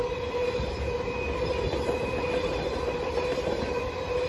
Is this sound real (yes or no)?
yes